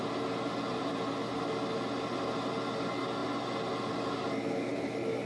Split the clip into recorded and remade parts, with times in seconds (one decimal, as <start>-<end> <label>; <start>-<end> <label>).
0.0-4.7 recorded; 4.7-5.3 remade